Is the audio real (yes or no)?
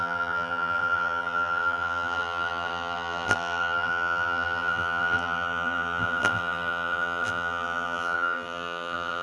no